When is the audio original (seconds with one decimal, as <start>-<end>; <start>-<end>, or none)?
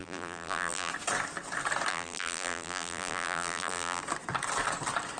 0.9-1.9; 4.0-5.2